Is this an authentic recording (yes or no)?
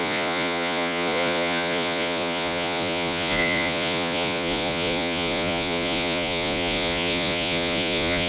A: no